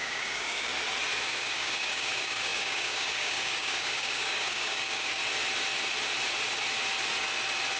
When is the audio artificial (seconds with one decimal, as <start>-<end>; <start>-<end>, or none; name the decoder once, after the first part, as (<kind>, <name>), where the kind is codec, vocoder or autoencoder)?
0.0-0.7 (codec, DAC); 1.2-5.2